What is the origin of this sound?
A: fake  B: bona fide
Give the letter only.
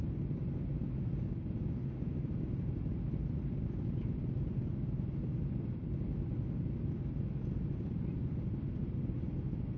B